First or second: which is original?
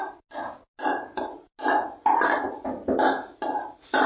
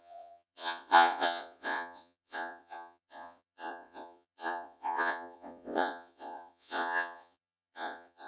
first